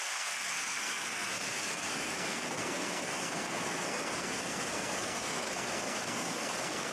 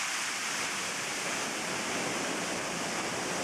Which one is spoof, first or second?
first